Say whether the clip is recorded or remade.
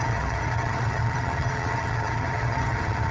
remade